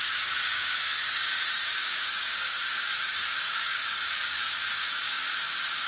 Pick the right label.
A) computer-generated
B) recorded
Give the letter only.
A